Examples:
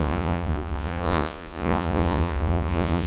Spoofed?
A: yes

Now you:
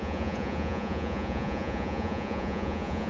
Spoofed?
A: yes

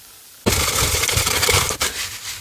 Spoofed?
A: yes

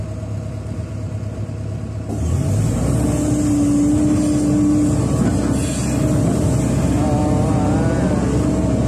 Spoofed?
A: no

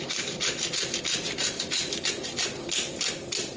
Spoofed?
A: no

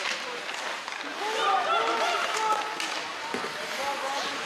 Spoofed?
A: no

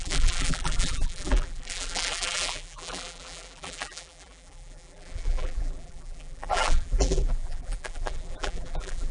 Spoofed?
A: yes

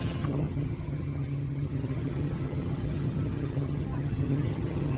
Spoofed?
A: yes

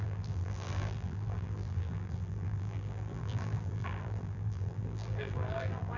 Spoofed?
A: yes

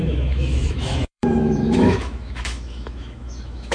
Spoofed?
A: yes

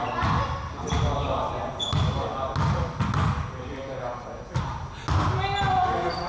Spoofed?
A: no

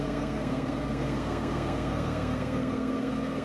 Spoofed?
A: yes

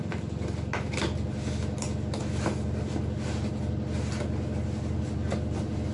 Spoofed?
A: no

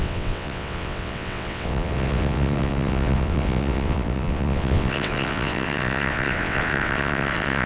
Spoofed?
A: yes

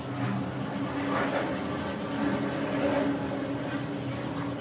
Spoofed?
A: no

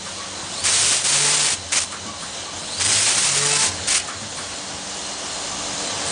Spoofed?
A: no